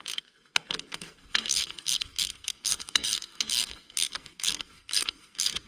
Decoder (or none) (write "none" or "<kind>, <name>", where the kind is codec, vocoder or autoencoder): codec, SNAC